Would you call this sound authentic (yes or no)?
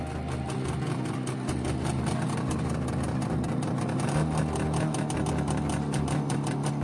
yes